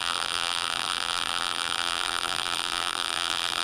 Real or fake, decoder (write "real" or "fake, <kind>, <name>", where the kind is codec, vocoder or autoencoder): fake, vocoder, BigVGAN v2